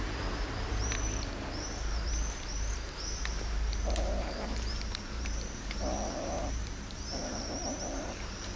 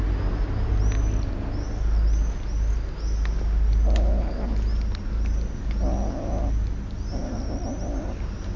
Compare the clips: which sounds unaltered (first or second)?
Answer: second